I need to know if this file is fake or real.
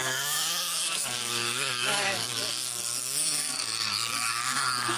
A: fake